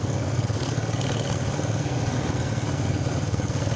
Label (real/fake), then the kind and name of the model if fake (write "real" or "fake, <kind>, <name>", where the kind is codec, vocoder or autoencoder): fake, codec, SNAC